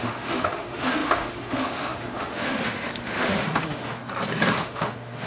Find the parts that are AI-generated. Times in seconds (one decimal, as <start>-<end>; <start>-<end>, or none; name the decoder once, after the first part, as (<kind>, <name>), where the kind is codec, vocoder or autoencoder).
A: 0.0-4.0 (autoencoder, DAC-VAE); 4.6-5.3